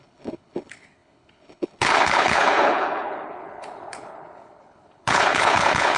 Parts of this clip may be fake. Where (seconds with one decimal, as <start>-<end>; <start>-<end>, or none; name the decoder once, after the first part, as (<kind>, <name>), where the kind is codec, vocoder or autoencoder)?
0.0-6.0 (codec, HILCodec)